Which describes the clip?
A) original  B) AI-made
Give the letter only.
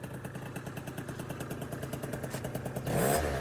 A